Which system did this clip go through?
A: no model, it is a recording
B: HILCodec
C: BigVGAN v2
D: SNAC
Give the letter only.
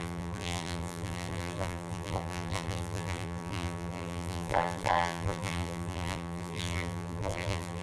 C